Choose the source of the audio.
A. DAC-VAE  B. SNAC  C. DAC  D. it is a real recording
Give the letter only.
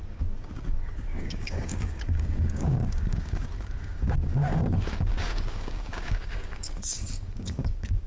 C